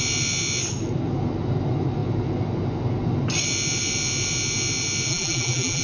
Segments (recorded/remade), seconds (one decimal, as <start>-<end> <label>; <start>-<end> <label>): 0.0-5.1 recorded; 5.1-5.8 remade